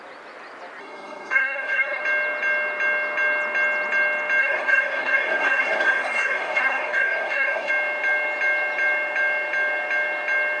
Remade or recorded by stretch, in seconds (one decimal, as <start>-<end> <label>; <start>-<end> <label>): 0.0-0.8 recorded; 0.8-2.0 remade; 2.0-4.4 recorded; 4.4-7.7 remade; 7.7-10.6 recorded